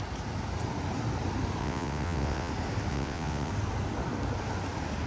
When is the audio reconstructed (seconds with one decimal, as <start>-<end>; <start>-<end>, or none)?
1.6-2.5; 2.9-3.5